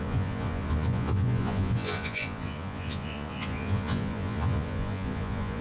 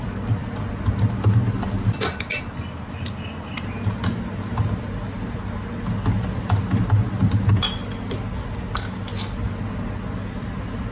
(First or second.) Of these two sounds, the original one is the second